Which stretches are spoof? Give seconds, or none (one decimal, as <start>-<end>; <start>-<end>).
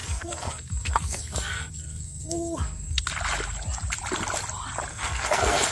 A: 0.0-3.0; 4.9-5.7